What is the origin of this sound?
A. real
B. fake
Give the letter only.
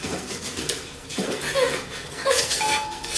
B